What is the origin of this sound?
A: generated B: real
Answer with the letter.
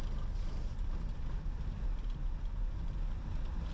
A